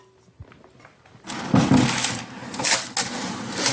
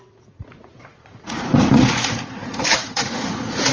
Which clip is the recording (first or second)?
first